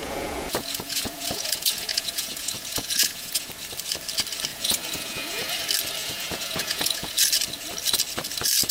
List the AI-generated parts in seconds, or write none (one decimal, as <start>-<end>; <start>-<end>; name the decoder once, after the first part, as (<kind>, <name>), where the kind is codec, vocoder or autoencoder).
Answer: 0.0-3.5 (vocoder, Vocos); 4.5-5.5; 6.0-7.1

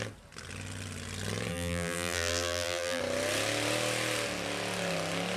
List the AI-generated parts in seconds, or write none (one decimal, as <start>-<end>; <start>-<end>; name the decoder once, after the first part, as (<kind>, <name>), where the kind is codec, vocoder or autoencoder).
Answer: 1.5-3.0 (vocoder, BigVGAN v2)

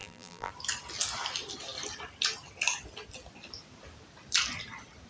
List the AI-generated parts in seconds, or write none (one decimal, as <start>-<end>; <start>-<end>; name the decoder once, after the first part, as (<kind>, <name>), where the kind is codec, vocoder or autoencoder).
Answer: 0.0-0.5 (vocoder, BigVGAN v2)

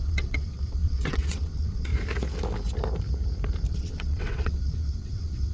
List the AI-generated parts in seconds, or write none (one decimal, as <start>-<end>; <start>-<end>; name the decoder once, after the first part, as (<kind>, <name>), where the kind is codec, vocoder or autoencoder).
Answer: 0.0-1.9 (vocoder, WaveNeXt); 3.7-5.5